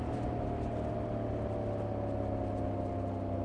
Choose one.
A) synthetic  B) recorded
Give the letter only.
B